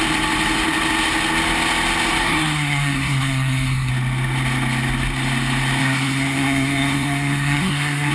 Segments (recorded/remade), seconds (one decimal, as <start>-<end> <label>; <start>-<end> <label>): 0.0-2.2 recorded; 2.2-3.9 remade; 3.9-5.8 recorded; 5.8-8.1 remade